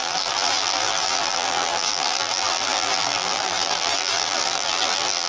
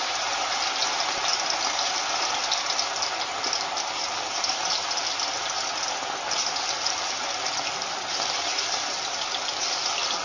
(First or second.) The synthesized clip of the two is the first